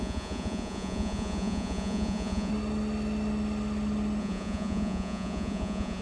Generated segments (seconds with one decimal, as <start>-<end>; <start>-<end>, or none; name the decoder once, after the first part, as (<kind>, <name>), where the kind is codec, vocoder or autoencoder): 0.0-2.5 (vocoder, Vocos); 4.2-6.0